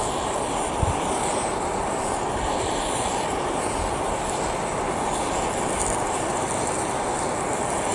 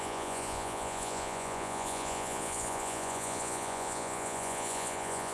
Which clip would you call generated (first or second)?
second